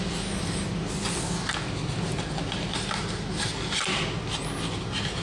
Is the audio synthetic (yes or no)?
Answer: no